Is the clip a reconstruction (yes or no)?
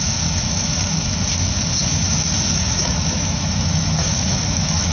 yes